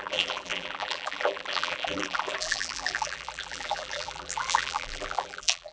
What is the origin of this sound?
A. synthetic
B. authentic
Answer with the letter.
A